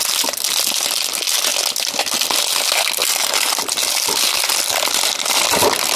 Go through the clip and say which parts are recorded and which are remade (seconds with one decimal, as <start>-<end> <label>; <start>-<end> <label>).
0.0-6.0 recorded